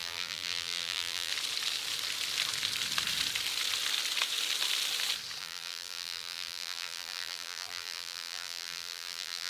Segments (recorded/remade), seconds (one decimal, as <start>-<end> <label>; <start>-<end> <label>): 0.0-1.3 remade; 1.3-5.4 recorded; 5.4-9.5 remade